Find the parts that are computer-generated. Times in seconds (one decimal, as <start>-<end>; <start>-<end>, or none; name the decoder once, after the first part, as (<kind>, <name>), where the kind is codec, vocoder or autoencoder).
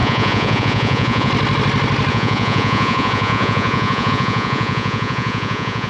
0.0-1.3 (vocoder, Vocos); 2.1-5.9